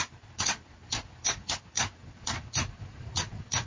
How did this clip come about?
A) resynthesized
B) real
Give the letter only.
A